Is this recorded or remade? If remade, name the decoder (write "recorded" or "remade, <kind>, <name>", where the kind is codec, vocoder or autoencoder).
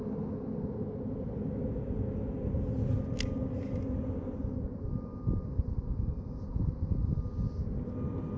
recorded